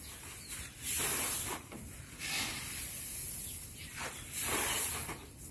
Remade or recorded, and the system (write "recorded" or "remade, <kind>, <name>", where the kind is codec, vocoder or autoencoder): recorded